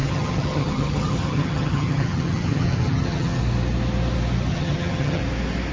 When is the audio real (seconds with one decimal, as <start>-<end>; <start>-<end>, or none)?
3.4-4.5; 5.2-5.7